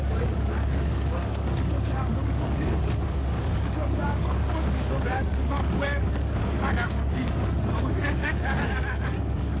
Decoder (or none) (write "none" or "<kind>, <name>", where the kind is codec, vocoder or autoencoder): codec, DAC